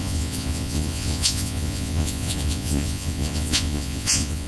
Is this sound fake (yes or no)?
yes